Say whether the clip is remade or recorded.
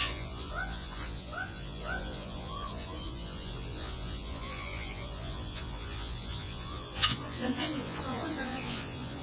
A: remade